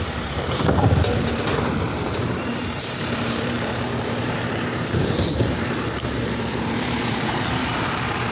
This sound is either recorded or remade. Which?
remade